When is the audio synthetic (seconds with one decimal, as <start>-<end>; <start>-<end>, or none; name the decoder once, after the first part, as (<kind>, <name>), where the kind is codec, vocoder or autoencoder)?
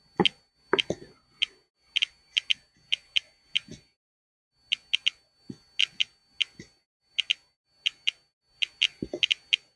none